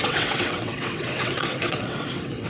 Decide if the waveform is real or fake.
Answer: fake